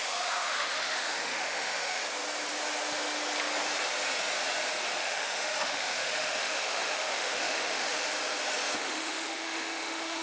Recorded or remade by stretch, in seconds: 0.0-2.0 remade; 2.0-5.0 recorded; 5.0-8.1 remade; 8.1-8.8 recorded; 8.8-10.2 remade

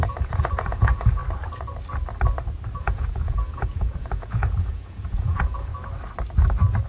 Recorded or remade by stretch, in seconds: 0.0-1.2 remade; 1.2-2.8 recorded; 2.8-5.7 remade; 5.7-6.9 recorded

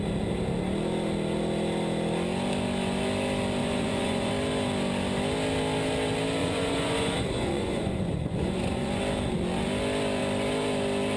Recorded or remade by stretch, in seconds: 0.0-3.6 recorded; 3.6-4.3 remade; 4.3-6.4 recorded; 6.4-9.0 remade; 9.0-11.2 recorded